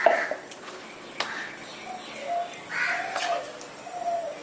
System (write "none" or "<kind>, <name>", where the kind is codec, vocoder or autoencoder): none